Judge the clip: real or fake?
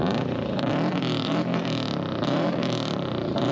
fake